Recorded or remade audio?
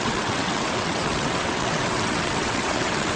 remade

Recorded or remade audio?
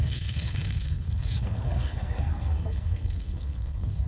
remade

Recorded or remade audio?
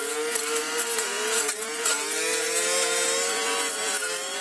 recorded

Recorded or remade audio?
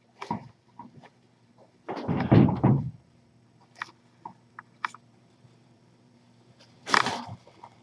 remade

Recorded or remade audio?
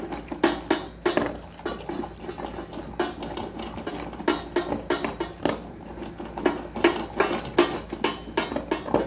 recorded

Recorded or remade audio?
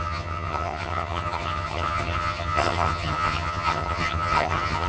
remade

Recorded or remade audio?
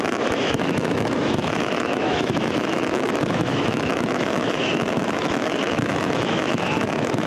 remade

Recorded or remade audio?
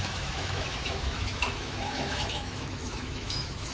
remade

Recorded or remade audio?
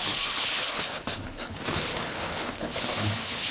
remade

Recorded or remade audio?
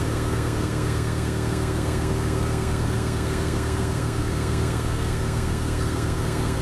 remade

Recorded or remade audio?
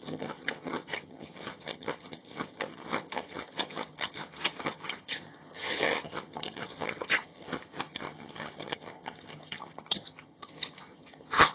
remade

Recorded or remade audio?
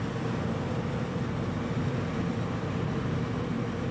recorded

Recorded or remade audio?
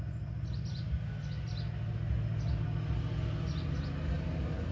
recorded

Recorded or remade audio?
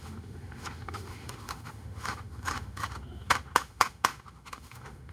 remade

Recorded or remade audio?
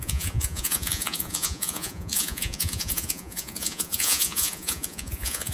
remade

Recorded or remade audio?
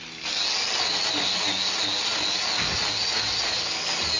recorded